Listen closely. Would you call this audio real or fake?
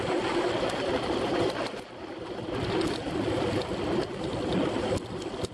real